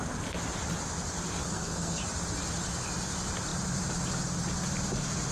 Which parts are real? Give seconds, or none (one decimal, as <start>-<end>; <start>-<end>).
0.0-1.4; 2.0-5.3